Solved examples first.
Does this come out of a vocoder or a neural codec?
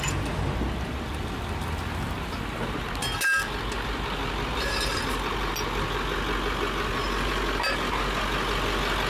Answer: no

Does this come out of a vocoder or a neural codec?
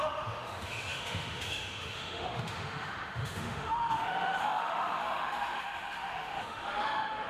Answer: yes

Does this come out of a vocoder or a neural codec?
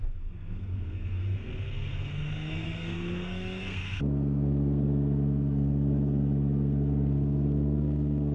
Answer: yes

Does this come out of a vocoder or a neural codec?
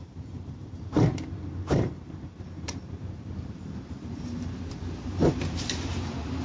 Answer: yes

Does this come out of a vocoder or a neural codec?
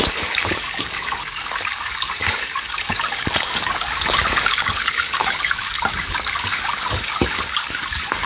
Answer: yes